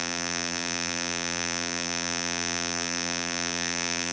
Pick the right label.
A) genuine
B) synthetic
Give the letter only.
B